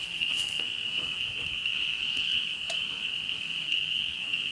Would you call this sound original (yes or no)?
no